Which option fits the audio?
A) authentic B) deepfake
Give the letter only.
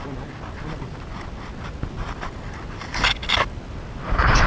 A